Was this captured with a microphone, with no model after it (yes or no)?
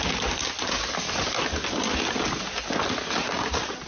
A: yes